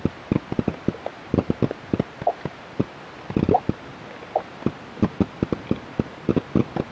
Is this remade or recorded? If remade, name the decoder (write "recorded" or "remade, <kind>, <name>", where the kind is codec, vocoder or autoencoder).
recorded